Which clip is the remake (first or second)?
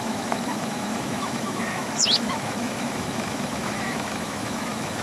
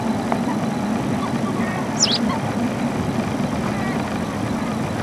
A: first